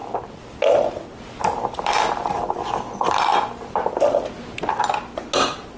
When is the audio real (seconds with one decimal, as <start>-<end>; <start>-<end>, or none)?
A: 0.0-5.8